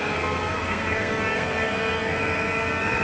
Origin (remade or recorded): remade